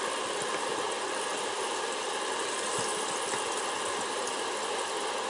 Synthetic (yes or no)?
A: no